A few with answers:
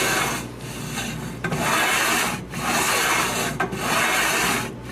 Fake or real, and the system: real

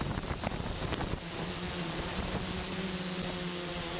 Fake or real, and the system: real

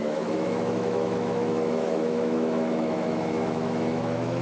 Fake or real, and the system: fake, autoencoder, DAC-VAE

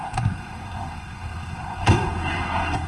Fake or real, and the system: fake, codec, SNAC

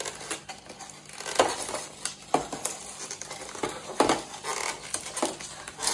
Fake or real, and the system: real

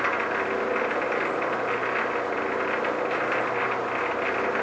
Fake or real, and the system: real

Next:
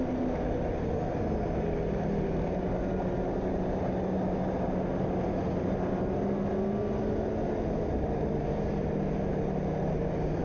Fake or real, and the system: real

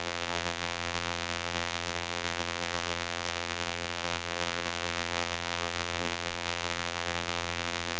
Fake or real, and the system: fake, vocoder, BigVGAN v2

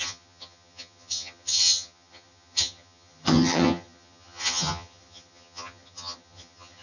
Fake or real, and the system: fake, vocoder, HiFi-GAN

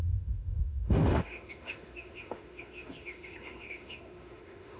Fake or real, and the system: fake, autoencoder, DAC-VAE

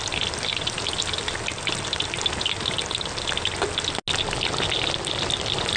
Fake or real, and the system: real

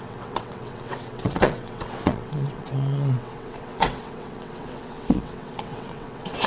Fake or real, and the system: fake, vocoder, WaveNeXt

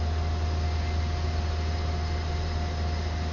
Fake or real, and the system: real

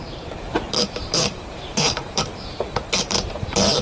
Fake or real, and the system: fake, vocoder, BigVGAN v2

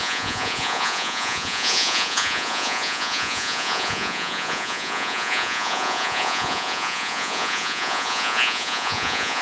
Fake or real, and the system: fake, vocoder, Vocos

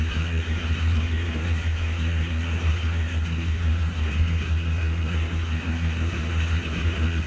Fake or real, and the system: fake, codec, SNAC